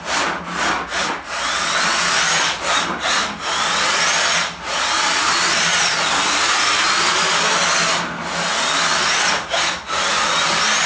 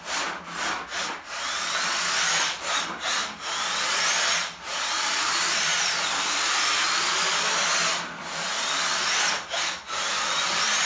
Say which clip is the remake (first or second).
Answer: second